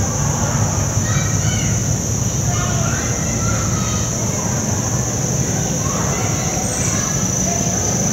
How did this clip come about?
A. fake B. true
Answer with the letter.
B